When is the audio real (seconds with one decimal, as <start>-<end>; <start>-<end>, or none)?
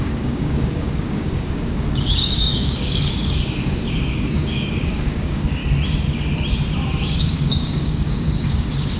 5.6-6.9